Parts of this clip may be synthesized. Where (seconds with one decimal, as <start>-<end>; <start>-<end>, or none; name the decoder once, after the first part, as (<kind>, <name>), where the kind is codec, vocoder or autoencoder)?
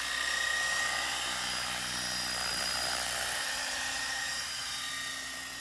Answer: 2.5-4.9 (vocoder, BigVGAN v2)